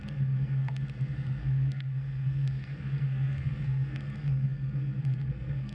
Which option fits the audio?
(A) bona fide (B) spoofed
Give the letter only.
B